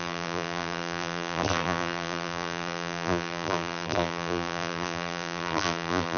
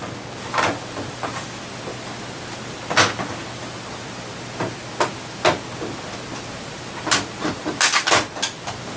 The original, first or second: second